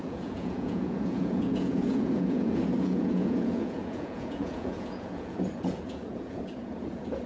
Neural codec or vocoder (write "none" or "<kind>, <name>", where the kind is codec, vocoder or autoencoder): vocoder, Vocos